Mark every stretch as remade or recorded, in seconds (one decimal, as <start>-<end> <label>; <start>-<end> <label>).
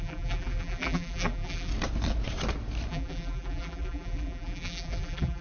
0.0-1.7 remade; 1.7-2.9 recorded; 2.9-5.4 remade